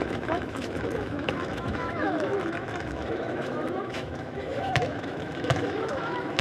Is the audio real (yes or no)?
no